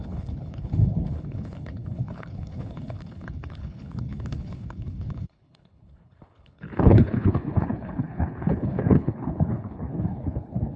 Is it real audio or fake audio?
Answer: fake